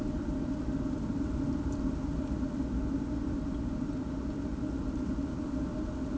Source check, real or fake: real